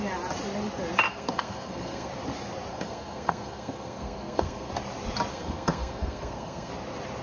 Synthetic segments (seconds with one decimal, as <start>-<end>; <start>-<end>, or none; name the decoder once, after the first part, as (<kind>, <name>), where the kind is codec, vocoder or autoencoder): 1.1-2.1 (codec, SNAC); 2.7-4.7; 5.3-6.7